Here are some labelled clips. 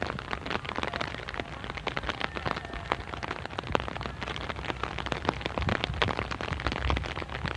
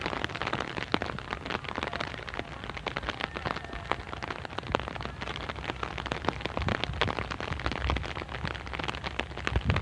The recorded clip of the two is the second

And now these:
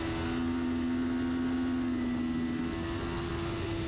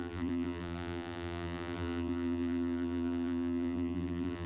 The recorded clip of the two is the first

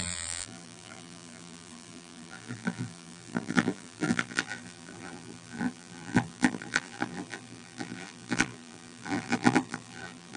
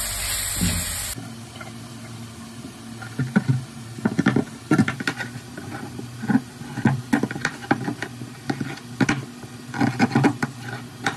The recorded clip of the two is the second